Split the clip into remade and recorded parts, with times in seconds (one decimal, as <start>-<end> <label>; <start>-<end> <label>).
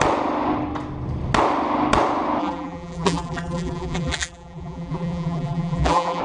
0.0-2.4 recorded; 2.4-6.2 remade